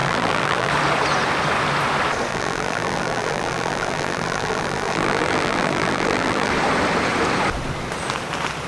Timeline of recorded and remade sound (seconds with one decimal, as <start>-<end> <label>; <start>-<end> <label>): 0.0-0.7 remade; 0.7-2.3 recorded; 2.3-6.5 remade; 6.5-8.7 recorded

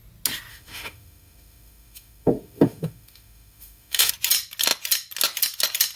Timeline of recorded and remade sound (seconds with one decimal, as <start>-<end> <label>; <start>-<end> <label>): 0.0-0.5 recorded; 0.5-4.1 remade; 4.1-6.0 recorded

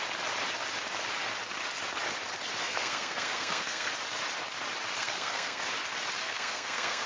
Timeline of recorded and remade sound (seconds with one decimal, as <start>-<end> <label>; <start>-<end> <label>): 0.0-2.6 recorded; 2.6-3.9 remade; 3.9-5.0 recorded; 5.0-5.6 remade; 5.6-6.2 recorded; 6.2-7.1 remade

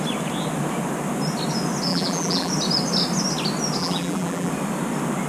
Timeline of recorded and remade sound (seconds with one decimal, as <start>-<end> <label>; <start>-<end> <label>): 0.0-1.9 recorded; 1.9-2.5 remade; 2.5-3.8 recorded; 3.8-4.5 remade; 4.5-5.3 recorded

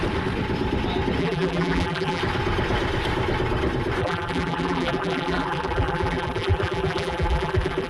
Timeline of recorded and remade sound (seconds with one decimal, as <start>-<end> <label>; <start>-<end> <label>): 0.0-1.2 recorded; 1.2-2.2 remade; 2.2-4.0 recorded; 4.0-7.9 remade

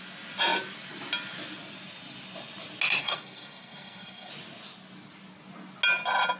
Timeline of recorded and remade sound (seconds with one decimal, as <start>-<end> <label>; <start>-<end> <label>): 0.0-3.0 recorded; 3.0-4.3 remade; 4.3-6.4 recorded

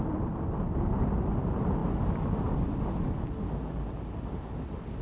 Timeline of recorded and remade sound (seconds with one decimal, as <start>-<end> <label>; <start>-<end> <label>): 0.0-5.0 recorded

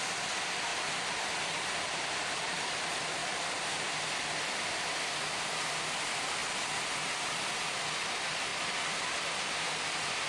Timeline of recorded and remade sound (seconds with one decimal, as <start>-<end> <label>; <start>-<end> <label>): 0.0-0.7 recorded; 0.7-2.3 remade; 2.3-3.2 recorded; 3.2-4.3 remade; 4.3-8.5 recorded; 8.5-9.1 remade; 9.1-10.3 recorded